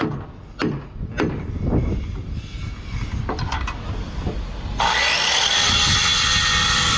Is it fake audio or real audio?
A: real